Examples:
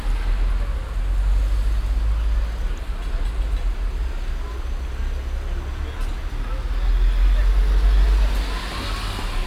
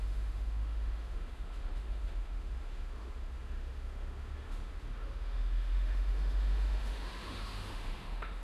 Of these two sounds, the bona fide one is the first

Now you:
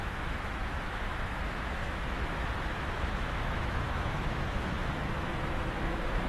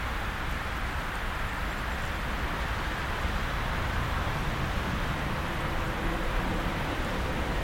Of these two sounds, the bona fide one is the second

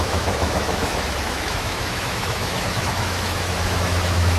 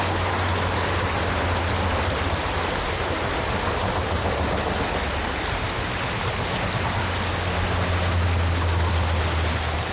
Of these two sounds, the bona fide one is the second